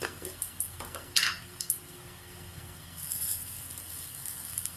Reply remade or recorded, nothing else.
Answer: remade